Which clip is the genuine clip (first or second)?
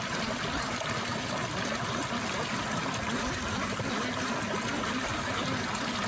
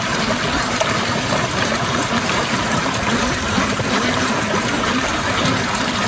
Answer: first